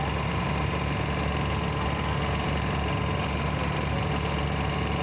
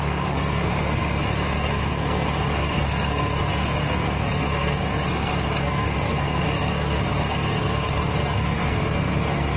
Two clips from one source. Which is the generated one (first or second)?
second